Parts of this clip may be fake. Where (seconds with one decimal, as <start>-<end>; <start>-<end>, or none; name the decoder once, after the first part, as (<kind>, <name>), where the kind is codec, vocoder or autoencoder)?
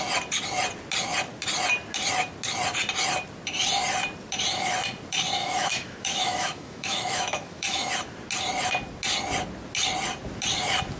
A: 5.4-7.9 (autoencoder, DAC-VAE)